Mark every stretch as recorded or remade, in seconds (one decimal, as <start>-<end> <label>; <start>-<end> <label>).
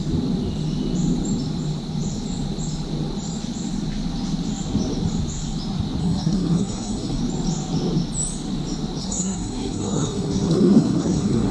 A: 0.0-6.0 recorded; 6.0-7.2 remade; 7.2-9.0 recorded; 9.0-11.5 remade